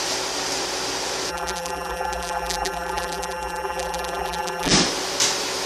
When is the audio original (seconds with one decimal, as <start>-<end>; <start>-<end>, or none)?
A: 0.0-1.3; 4.7-5.7